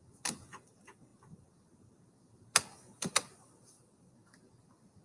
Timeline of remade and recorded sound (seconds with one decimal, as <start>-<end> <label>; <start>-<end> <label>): 0.0-5.0 recorded

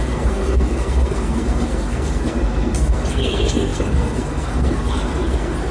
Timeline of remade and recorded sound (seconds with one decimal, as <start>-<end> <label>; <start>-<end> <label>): 0.0-5.7 remade